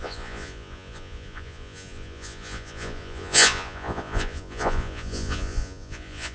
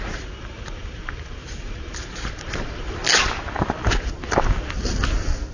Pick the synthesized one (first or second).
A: first